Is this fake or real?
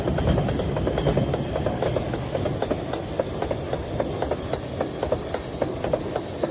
real